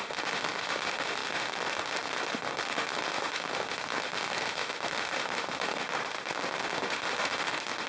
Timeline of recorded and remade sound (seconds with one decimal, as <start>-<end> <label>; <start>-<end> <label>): 0.0-6.0 remade; 6.0-6.6 recorded; 6.6-7.9 remade